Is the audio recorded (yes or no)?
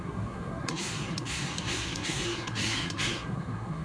no